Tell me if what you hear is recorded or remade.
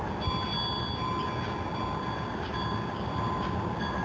recorded